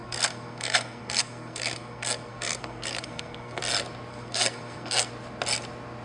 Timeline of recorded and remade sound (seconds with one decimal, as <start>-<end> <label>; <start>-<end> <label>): 0.0-3.6 remade; 3.6-4.1 recorded; 4.1-5.1 remade; 5.1-6.0 recorded